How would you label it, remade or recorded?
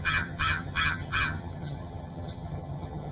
remade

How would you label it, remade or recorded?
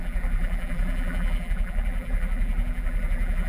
remade